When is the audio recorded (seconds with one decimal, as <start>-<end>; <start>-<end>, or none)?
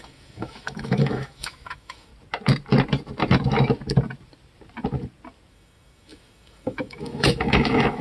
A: 2.1-5.5